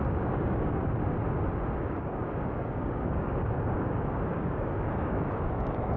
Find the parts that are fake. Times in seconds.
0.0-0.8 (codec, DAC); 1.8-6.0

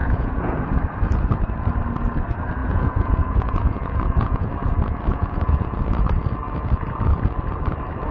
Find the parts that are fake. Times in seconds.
0.0-0.6 (vocoder, Vocos); 2.6-4.5; 5.1-5.8

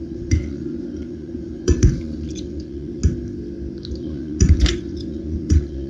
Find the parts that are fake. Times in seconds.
0.0-3.0 (vocoder, Vocos); 3.9-5.9

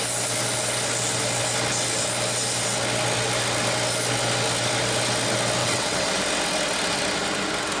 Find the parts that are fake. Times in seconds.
5.6-6.1 (vocoder, WaveNeXt)

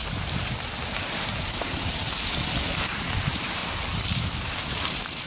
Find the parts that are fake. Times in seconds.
1.1-2.0 (vocoder, BigVGAN v2); 3.2-3.6; 4.5-5.3

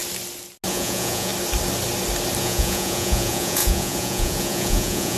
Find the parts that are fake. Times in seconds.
0.7-1.3 (vocoder, Vocos); 2.4-5.2

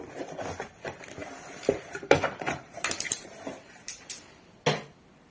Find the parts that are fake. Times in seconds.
1.2-4.4 (vocoder, BigVGAN v2)